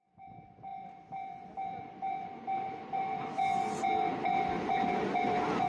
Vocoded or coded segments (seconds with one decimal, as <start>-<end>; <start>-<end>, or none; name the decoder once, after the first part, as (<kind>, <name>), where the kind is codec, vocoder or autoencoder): none